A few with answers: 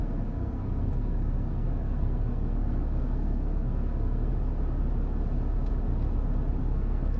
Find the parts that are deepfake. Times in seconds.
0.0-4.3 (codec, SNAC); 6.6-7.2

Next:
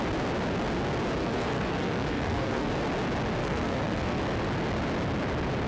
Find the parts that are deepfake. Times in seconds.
1.2-2.7 (codec, SNAC); 3.4-4.2